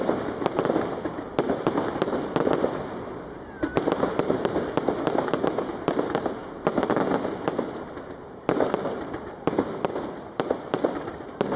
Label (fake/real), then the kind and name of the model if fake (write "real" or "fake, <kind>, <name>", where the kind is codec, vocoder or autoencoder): real